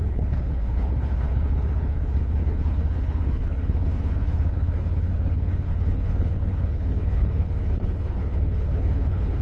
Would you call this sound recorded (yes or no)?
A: no